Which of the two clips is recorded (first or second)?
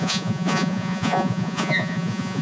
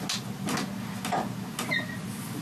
second